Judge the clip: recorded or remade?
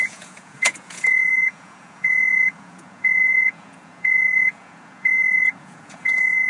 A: remade